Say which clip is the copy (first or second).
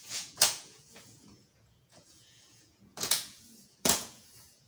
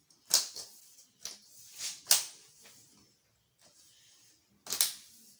first